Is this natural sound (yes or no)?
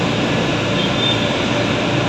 yes